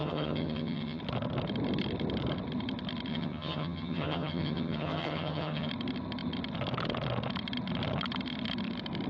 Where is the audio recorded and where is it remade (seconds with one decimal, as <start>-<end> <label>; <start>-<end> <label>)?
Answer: 0.0-1.0 remade; 1.0-3.1 recorded; 3.1-5.7 remade; 5.7-9.1 recorded